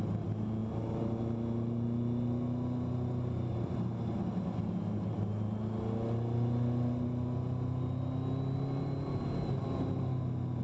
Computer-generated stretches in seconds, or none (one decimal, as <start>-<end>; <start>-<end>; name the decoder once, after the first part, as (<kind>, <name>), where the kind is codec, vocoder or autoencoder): none